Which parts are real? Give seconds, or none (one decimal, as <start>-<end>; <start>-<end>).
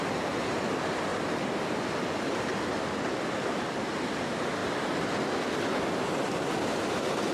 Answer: 0.0-7.3